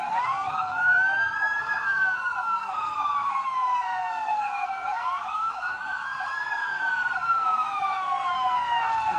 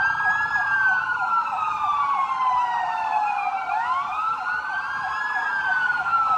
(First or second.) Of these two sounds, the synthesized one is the first